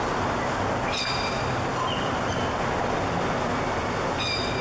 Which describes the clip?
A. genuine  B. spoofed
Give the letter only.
A